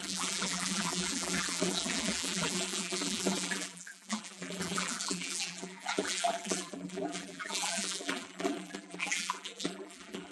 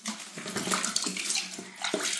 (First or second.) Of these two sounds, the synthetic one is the first